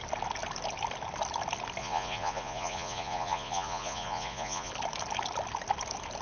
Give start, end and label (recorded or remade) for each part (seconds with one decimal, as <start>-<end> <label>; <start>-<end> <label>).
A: 0.0-1.8 recorded; 1.8-4.7 remade; 4.7-6.2 recorded